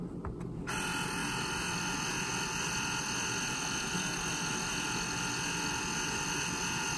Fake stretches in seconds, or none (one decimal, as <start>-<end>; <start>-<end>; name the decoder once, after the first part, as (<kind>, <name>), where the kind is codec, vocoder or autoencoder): 3.9-4.5 (vocoder, BigVGAN v2)